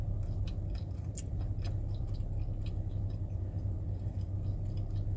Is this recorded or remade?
recorded